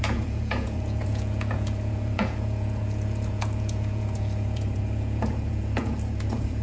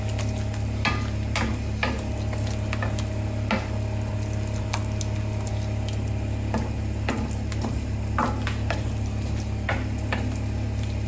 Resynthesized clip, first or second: first